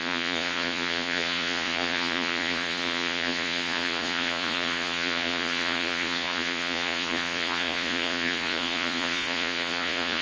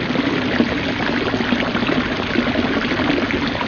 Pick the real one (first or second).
second